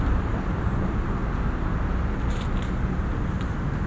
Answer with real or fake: real